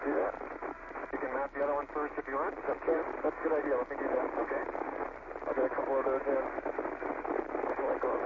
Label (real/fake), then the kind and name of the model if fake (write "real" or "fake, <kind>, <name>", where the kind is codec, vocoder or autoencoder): real